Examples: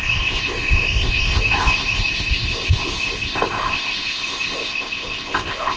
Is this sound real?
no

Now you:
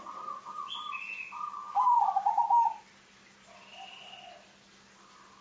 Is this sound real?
yes